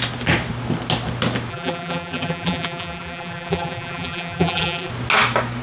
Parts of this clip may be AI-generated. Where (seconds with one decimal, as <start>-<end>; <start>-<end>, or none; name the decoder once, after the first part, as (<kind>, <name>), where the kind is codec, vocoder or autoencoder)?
1.5-4.9 (vocoder, BigVGAN v2)